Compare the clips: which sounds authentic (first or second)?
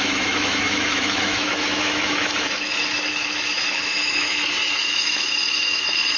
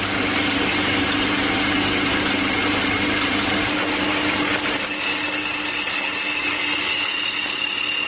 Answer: second